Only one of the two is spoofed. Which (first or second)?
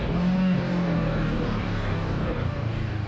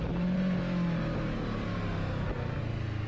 first